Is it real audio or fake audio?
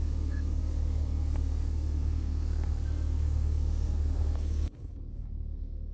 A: fake